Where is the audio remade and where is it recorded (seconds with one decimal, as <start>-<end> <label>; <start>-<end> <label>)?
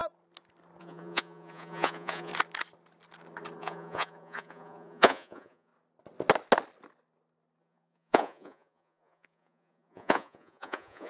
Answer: 0.0-0.8 recorded; 0.8-2.3 remade; 2.3-3.6 recorded; 3.6-5.7 remade; 5.7-7.6 recorded; 7.6-11.1 remade